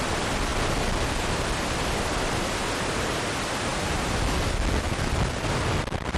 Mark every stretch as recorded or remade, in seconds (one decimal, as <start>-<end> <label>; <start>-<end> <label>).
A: 0.0-6.2 recorded